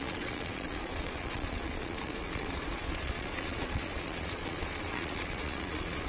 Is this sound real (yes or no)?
no